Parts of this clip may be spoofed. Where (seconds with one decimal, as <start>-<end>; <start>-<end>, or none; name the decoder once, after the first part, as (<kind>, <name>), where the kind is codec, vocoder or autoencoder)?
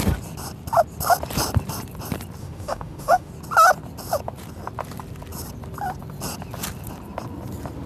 2.4-3.3 (autoencoder, DAC-VAE)